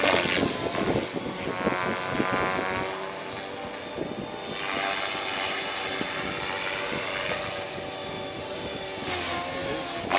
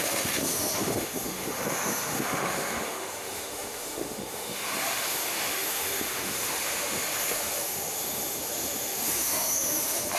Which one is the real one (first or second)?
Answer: first